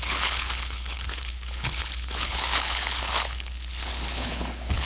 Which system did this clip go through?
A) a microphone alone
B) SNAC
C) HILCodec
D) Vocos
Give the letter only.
C